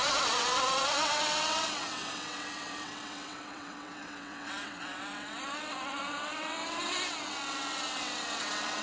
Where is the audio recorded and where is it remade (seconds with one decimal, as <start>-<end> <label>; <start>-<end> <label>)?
0.0-8.8 remade